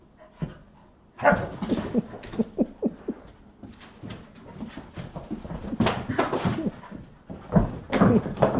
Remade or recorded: recorded